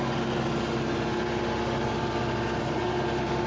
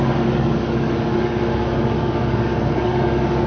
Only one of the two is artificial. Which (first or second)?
second